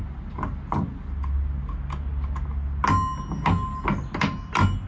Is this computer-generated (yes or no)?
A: no